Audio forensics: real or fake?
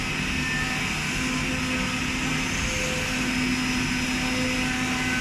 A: real